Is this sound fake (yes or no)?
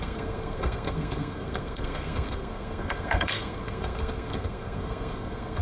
yes